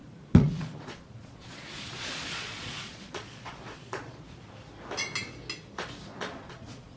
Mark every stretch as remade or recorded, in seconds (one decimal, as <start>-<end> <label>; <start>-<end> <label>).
0.0-4.2 remade; 4.2-6.1 recorded; 6.1-7.0 remade